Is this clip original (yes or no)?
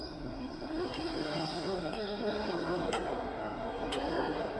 no